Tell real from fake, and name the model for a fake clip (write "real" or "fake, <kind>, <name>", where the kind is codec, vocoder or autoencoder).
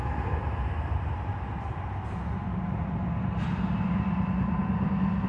real